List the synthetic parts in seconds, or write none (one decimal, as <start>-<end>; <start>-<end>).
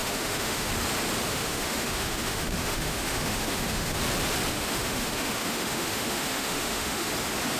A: 0.0-0.7; 1.3-4.0; 4.5-7.1